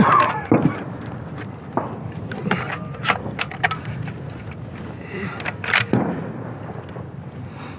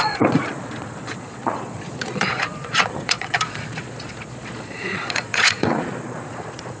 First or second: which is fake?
second